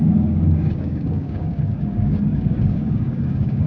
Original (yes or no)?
no